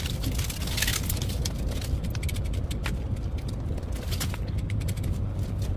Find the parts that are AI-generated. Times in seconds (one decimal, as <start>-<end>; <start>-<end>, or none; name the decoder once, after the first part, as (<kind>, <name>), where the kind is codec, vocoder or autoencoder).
none